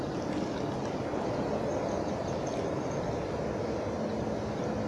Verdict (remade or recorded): recorded